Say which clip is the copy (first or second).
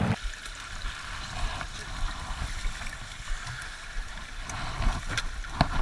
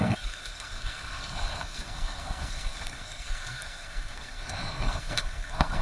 second